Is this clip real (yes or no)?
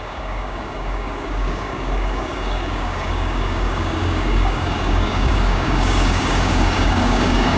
no